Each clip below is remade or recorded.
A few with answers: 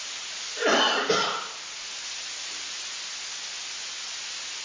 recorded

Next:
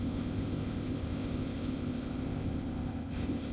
remade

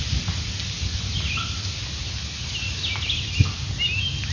recorded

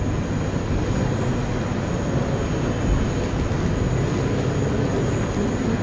recorded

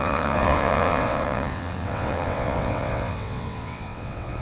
remade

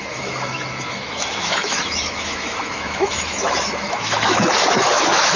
remade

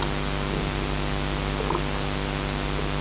recorded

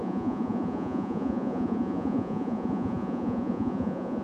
remade